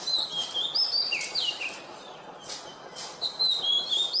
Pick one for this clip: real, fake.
real